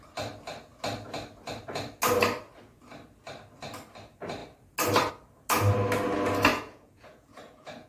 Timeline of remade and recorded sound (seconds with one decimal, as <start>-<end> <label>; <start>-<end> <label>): 0.0-6.5 recorded; 6.5-7.9 remade